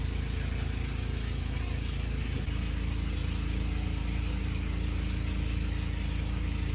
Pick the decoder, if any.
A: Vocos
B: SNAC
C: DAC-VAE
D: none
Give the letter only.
D